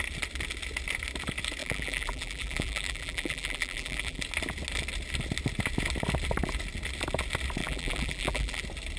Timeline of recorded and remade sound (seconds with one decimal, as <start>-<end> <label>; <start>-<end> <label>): 0.0-1.6 recorded; 1.6-4.2 remade; 4.2-7.6 recorded; 7.6-8.6 remade; 8.6-9.0 recorded